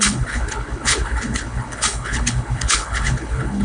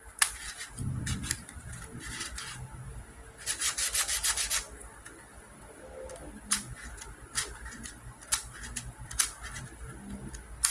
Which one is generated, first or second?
first